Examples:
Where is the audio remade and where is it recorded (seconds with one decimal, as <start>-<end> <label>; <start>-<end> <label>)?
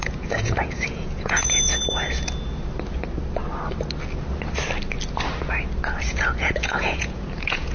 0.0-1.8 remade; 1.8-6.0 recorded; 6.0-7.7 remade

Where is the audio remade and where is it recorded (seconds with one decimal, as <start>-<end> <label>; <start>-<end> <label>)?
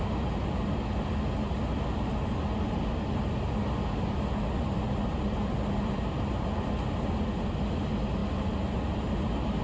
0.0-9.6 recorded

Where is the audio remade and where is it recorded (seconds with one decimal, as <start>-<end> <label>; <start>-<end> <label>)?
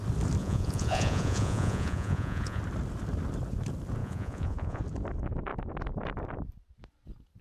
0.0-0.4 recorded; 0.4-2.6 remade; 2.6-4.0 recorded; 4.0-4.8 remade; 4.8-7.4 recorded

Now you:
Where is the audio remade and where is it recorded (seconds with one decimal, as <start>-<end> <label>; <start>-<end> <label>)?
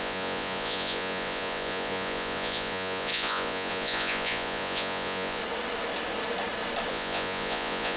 0.0-5.4 remade; 5.4-6.9 recorded; 6.9-8.0 remade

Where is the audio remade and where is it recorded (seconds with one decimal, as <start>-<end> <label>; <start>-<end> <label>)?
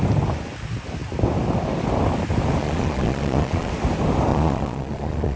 0.0-2.6 recorded; 2.6-3.7 remade; 3.7-4.3 recorded; 4.3-5.4 remade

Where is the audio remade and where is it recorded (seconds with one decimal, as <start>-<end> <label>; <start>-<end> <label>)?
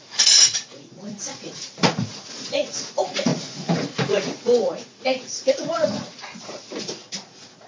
0.0-7.7 remade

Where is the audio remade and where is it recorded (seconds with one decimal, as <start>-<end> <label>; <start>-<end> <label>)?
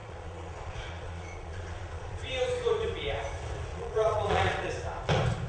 0.0-2.2 remade; 2.2-3.7 recorded; 3.7-4.7 remade; 4.7-5.5 recorded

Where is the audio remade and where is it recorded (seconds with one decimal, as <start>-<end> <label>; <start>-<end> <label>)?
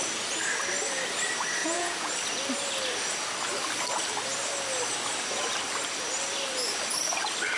0.0-1.6 recorded; 1.6-2.1 remade; 2.1-7.6 recorded